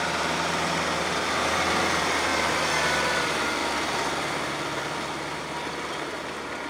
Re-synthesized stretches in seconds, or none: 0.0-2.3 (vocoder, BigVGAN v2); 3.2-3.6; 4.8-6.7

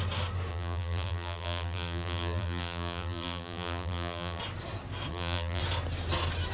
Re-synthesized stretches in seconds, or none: 0.5-4.4 (vocoder, BigVGAN v2); 5.1-5.6

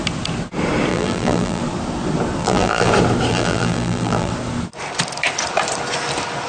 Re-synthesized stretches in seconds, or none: 0.9-1.6 (vocoder, BigVGAN v2); 2.4-2.9; 3.3-4.3

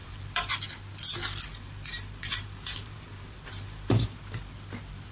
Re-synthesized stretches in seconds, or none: 0.0-0.5 (vocoder, BigVGAN v2); 1.5-4.2

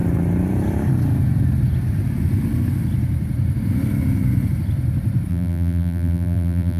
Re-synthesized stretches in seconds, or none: 5.3-6.8 (vocoder, BigVGAN v2)

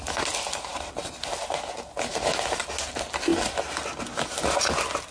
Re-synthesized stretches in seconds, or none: none